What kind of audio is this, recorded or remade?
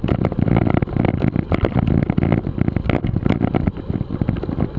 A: recorded